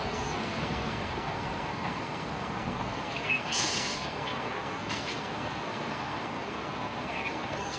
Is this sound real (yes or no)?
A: no